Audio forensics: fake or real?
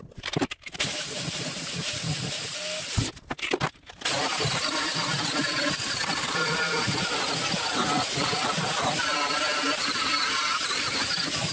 real